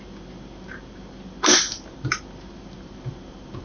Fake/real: real